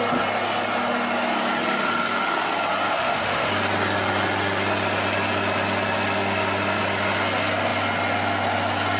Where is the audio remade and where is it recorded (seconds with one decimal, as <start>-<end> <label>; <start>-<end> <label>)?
0.0-2.9 recorded; 2.9-3.5 remade; 3.5-9.0 recorded